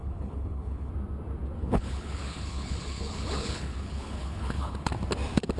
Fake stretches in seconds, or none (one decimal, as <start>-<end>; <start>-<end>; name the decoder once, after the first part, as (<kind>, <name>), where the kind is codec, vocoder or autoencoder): 0.0-0.9 (codec, HILCodec); 1.6-4.9